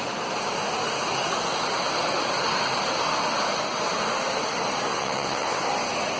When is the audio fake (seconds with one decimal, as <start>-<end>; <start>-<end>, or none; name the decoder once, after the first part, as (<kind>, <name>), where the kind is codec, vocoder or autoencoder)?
4.9-5.6 (vocoder, WaveNeXt)